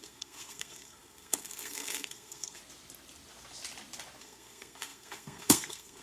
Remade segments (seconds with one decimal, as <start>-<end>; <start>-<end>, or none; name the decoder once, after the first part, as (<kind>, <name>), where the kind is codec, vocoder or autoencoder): 0.0-2.6 (codec, SNAC); 4.2-6.0